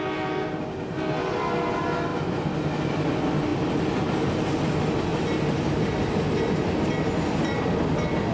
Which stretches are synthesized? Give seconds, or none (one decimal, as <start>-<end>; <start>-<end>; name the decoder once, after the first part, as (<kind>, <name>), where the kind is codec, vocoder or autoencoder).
none